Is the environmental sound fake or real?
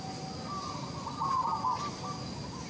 real